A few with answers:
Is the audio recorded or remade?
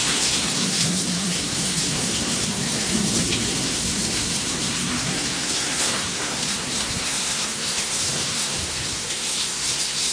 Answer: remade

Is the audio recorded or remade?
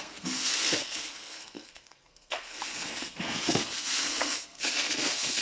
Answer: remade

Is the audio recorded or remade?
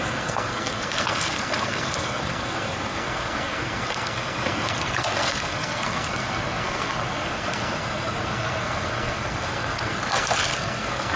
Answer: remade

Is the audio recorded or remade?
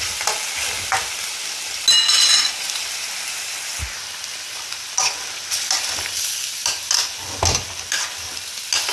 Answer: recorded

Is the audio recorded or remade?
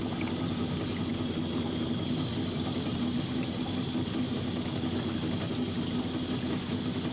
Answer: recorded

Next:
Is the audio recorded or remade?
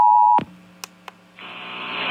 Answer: recorded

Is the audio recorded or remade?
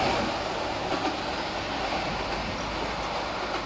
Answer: recorded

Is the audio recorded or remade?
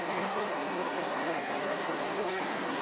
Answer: remade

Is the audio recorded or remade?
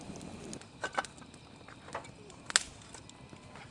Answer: recorded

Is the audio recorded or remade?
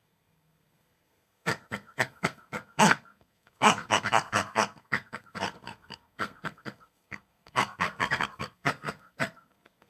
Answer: remade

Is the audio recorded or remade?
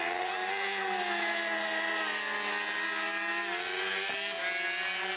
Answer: recorded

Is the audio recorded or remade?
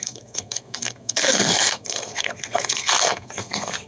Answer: remade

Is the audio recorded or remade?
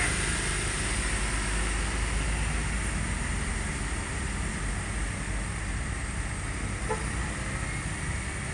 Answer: recorded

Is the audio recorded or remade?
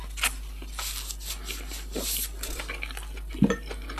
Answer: recorded